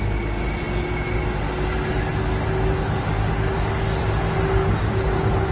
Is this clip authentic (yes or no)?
yes